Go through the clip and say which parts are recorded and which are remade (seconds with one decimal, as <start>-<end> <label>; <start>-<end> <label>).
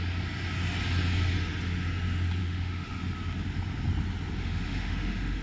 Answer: 0.0-2.4 recorded; 2.4-3.0 remade; 3.0-4.4 recorded; 4.4-5.4 remade